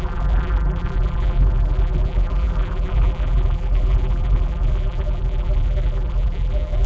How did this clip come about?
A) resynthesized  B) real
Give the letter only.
A